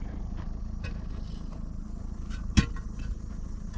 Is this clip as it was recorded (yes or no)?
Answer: yes